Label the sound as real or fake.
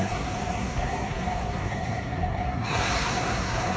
fake